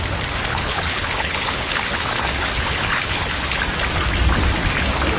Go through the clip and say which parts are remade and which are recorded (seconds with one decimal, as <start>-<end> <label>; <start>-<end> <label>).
0.0-0.5 recorded; 0.5-3.6 remade; 3.6-5.2 recorded